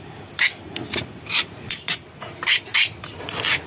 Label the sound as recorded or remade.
recorded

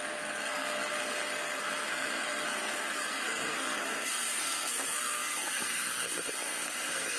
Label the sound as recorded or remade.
remade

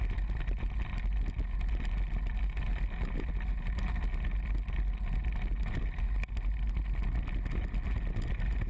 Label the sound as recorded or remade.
recorded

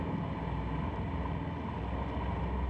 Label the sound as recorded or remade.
recorded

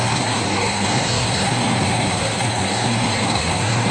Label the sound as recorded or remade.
remade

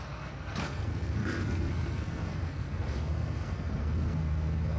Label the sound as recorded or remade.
remade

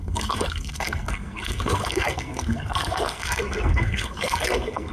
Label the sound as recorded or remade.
remade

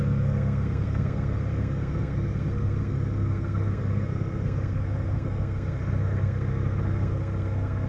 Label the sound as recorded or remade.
remade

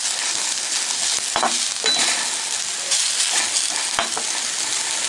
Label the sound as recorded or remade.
recorded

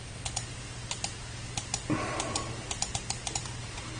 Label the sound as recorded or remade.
recorded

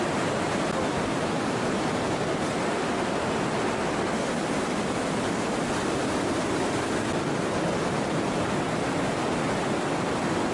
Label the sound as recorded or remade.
recorded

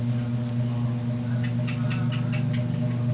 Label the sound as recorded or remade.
recorded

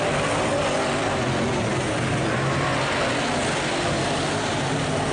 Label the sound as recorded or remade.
recorded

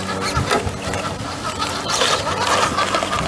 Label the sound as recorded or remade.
recorded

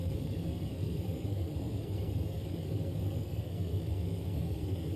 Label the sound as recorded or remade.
remade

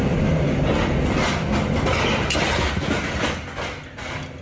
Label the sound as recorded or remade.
recorded